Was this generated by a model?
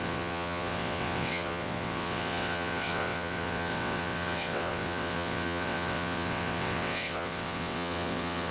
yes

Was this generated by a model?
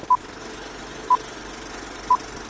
no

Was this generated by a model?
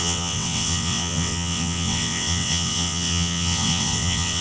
yes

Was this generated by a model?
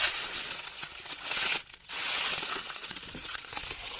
yes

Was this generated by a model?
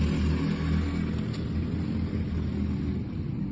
no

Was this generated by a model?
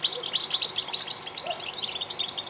no